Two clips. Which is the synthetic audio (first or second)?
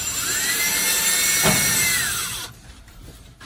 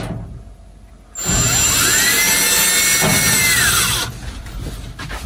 first